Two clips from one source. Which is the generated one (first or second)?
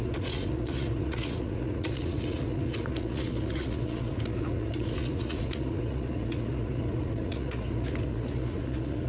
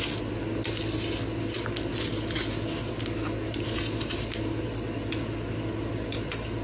first